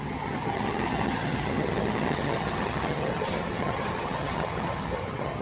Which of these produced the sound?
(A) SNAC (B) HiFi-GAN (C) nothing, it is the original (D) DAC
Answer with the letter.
B